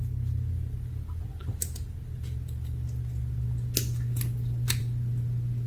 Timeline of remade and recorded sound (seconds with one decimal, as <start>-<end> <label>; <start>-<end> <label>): 0.0-5.7 recorded